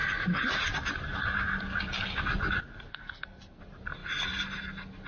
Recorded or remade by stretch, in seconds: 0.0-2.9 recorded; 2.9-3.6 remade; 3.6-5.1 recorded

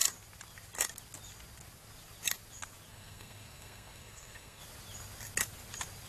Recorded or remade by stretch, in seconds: 0.0-2.9 recorded; 2.9-4.6 remade; 4.6-6.1 recorded

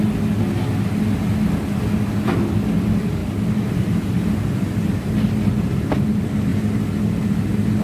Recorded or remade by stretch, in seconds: 0.0-7.8 recorded

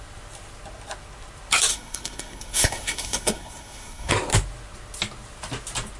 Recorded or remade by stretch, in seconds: 0.0-1.7 recorded; 1.7-4.1 remade; 4.1-6.0 recorded